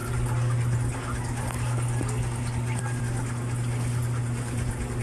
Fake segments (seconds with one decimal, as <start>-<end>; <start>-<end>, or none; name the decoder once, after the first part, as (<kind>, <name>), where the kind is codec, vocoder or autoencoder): none